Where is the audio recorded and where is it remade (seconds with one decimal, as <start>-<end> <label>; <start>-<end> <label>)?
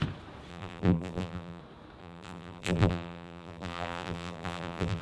0.0-0.5 recorded; 0.5-1.6 remade; 1.6-2.0 recorded; 2.0-5.0 remade